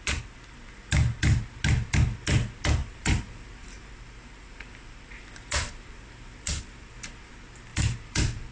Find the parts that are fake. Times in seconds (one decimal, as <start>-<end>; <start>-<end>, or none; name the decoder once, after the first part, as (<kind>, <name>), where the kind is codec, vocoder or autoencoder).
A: 2.8-7.3 (vocoder, BigVGAN v2); 7.7-8.5